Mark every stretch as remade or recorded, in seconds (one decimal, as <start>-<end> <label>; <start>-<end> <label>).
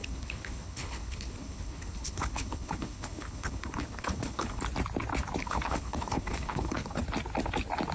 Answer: 0.0-4.6 remade; 4.6-5.4 recorded; 5.4-7.0 remade; 7.0-7.9 recorded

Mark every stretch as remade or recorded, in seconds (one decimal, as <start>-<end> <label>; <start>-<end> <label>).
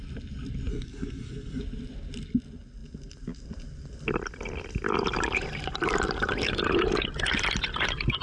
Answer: 0.0-0.7 recorded; 0.7-1.6 remade; 1.6-8.2 recorded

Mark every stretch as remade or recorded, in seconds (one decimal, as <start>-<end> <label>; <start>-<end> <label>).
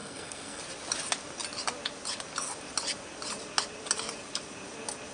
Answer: 0.0-0.6 remade; 0.6-5.1 recorded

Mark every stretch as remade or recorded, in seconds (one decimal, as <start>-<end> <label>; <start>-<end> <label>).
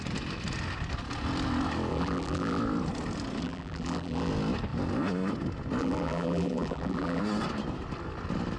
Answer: 0.0-1.9 recorded; 1.9-2.6 remade; 2.6-3.4 recorded; 3.4-4.3 remade; 4.3-5.8 recorded; 5.8-7.2 remade; 7.2-8.6 recorded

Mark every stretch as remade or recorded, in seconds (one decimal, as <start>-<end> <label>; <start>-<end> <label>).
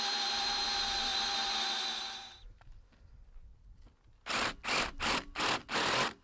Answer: 0.0-6.2 recorded